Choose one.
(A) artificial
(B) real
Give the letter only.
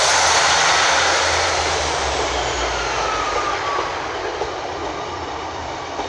B